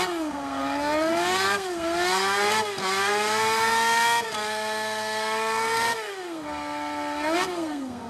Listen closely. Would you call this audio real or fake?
fake